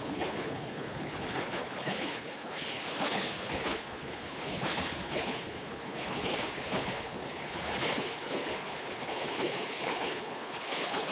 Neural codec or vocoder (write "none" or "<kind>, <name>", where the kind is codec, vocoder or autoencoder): codec, HILCodec